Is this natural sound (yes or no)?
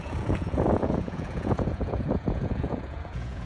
no